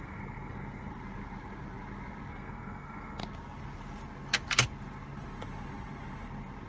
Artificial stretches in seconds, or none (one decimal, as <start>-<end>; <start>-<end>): 0.0-0.9; 2.3-3.2